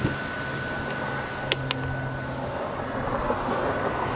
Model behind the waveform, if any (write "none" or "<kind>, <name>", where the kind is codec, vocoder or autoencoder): none